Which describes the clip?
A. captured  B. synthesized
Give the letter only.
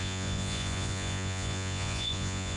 B